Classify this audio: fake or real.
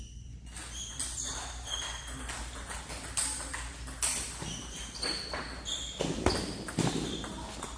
real